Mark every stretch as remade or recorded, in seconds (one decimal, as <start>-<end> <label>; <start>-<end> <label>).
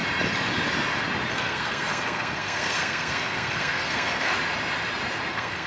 0.0-1.3 recorded; 1.3-4.3 remade; 4.3-5.3 recorded; 5.3-5.7 remade